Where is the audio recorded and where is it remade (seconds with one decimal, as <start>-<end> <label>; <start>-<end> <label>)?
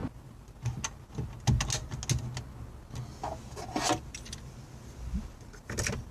0.0-6.1 recorded